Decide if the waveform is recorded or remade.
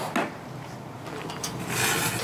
recorded